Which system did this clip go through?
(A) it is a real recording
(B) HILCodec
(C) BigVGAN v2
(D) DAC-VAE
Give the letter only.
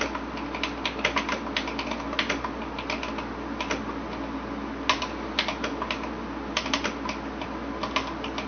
A